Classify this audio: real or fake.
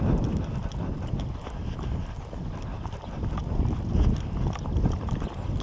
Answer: real